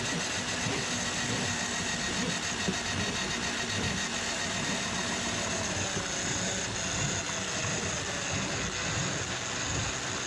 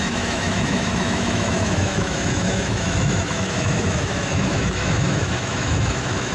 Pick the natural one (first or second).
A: first